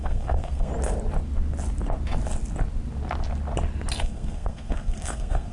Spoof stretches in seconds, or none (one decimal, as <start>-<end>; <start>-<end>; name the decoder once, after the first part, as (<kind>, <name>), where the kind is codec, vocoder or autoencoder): 0.0-0.7 (codec, SNAC); 4.0-5.5